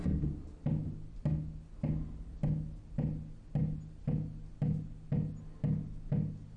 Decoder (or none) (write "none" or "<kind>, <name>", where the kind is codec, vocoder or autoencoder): none